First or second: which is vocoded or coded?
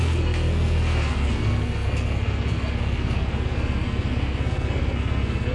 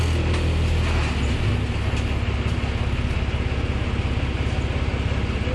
first